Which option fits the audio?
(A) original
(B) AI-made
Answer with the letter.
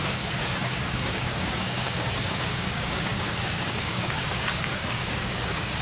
B